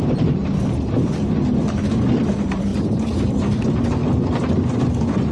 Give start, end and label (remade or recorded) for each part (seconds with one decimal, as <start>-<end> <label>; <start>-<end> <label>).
0.0-5.3 recorded